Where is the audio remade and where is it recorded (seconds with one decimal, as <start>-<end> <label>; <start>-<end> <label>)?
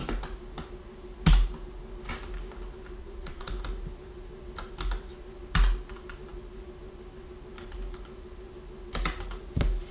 0.0-3.0 recorded; 3.0-3.5 remade; 3.5-9.9 recorded